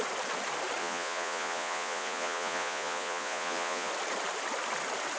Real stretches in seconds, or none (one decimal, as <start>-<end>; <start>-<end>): 0.0-0.8; 3.9-5.2